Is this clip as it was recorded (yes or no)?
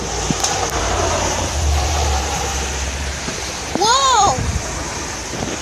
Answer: no